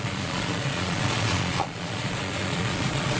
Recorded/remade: remade